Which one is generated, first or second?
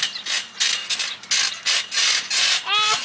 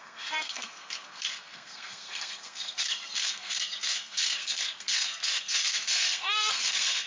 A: second